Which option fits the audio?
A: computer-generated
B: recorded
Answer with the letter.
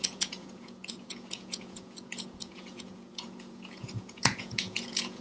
A